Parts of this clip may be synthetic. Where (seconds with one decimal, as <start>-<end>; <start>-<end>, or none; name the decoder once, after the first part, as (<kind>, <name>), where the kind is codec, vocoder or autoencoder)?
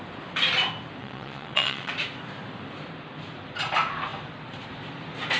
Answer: 1.0-1.9 (vocoder, WaveNeXt)